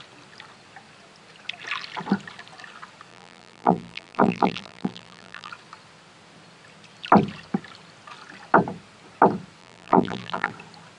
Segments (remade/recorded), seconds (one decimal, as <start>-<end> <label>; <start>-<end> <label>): 0.0-3.1 recorded; 3.1-5.5 remade; 5.5-9.6 recorded; 9.6-10.5 remade; 10.5-11.0 recorded